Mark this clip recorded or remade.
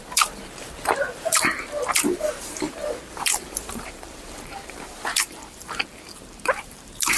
remade